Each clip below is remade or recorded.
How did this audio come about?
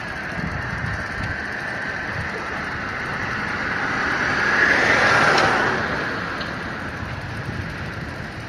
recorded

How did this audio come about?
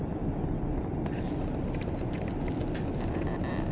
recorded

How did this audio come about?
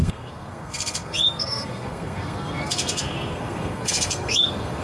remade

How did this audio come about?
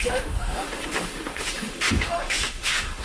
remade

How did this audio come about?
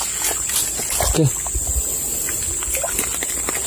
recorded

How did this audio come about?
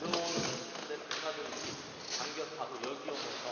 recorded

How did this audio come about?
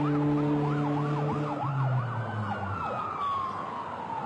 recorded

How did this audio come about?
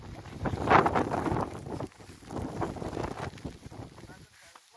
recorded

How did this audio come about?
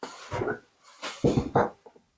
recorded